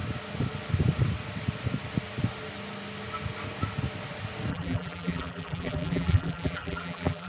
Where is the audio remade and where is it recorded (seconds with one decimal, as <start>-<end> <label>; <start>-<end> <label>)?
0.0-4.5 recorded; 4.5-7.3 remade